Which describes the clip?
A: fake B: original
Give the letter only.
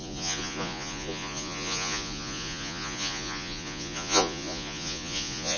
A